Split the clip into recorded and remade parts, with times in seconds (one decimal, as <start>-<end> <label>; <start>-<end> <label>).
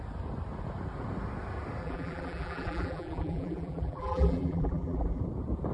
0.0-1.8 recorded; 1.8-5.2 remade; 5.2-5.7 recorded